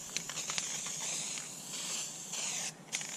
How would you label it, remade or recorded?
recorded